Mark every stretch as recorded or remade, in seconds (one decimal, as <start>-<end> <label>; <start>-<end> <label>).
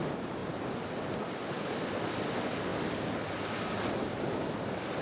0.0-5.0 recorded